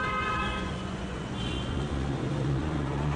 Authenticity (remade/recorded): remade